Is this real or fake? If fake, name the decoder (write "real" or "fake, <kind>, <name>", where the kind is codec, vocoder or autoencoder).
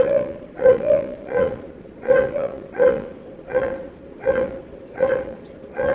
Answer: fake, vocoder, Vocos